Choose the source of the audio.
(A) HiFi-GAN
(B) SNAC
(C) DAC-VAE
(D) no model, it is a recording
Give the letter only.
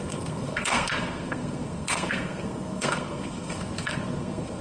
B